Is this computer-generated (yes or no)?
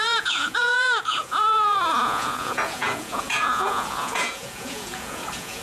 yes